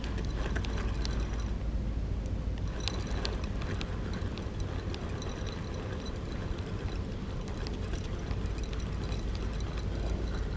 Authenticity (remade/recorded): recorded